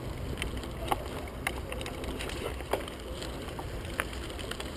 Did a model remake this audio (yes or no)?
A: no